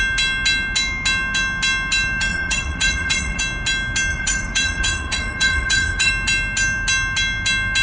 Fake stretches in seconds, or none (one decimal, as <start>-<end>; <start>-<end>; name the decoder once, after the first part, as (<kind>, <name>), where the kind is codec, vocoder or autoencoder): 2.3-3.4 (vocoder, Vocos); 4.1-6.1